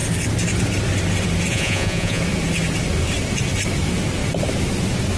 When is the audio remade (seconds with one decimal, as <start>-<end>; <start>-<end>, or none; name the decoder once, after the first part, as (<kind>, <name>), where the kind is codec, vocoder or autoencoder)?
1.5-2.2 (vocoder, Vocos)